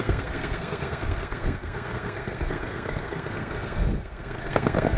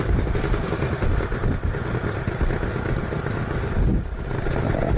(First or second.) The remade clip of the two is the first